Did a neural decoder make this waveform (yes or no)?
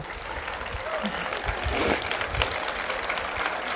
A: no